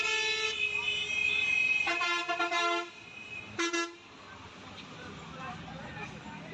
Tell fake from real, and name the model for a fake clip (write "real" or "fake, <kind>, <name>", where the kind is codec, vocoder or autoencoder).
real